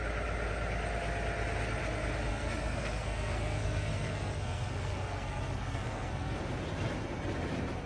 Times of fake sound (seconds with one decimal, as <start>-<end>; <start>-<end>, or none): 2.3-6.4

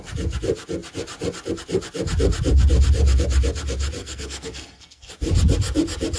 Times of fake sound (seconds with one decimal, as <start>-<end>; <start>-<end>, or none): 4.0-5.1